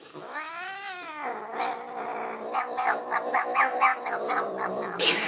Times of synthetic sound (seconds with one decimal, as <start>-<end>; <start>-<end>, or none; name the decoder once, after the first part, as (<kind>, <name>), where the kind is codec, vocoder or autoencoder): 0.0-0.5 (autoencoder, DAC-VAE); 3.4-3.9; 4.7-5.3